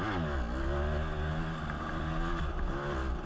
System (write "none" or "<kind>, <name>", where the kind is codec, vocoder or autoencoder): none